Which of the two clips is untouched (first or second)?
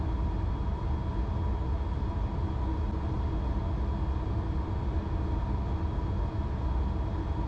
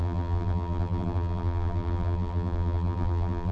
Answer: first